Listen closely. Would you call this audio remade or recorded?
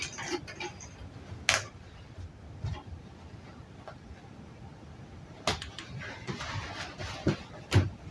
recorded